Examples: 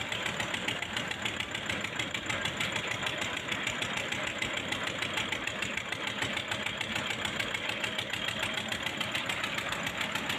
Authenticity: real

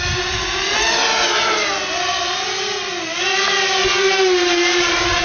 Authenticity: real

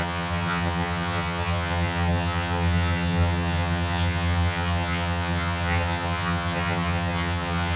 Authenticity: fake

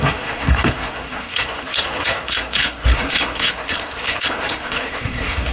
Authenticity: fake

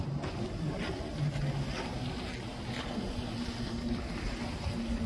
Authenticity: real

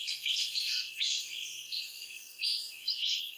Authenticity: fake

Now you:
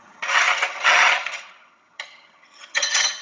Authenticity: fake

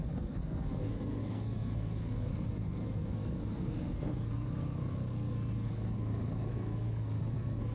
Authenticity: fake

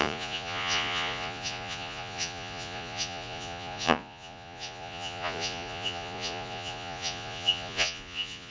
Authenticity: fake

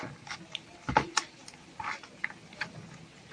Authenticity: real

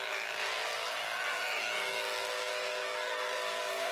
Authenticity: fake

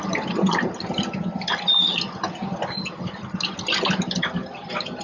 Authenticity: real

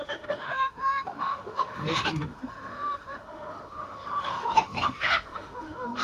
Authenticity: fake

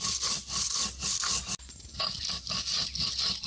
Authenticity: real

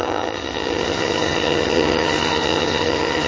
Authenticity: fake